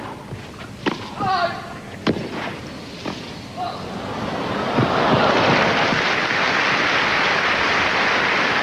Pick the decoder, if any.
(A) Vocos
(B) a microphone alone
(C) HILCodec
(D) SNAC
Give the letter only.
B